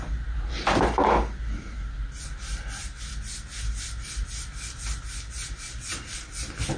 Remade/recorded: recorded